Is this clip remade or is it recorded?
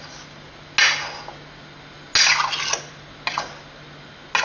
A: recorded